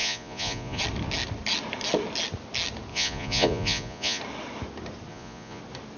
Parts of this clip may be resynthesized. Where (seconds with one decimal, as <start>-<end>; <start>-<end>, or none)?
0.0-0.8; 2.9-4.2; 5.1-5.6